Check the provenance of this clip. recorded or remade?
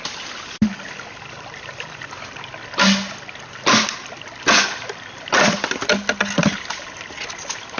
recorded